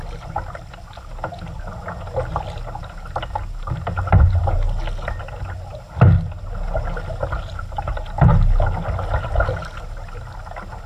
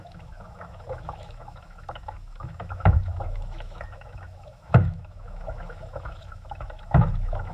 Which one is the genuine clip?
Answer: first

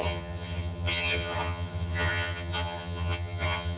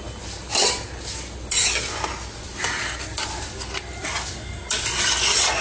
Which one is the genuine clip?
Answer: second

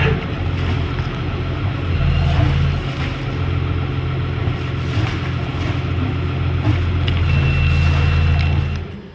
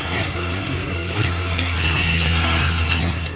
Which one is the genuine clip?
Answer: first